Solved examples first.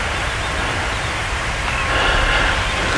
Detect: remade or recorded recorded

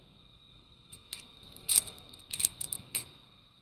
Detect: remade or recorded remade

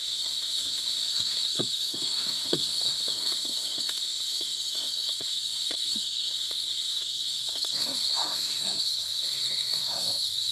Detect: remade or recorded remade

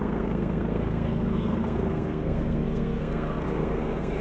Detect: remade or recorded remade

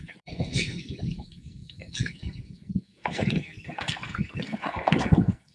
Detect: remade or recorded remade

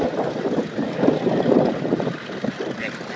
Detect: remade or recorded recorded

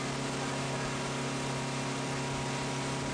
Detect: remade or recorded recorded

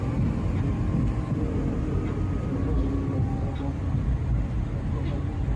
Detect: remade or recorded recorded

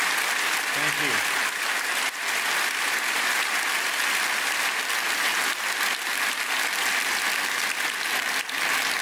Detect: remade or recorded recorded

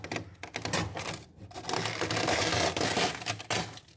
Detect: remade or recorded recorded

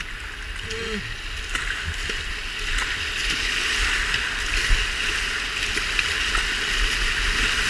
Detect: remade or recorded recorded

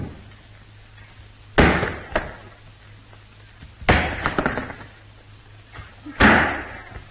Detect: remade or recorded recorded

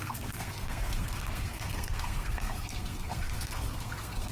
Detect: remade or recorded remade